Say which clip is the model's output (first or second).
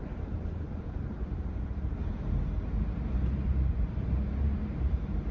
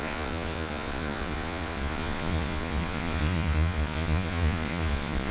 second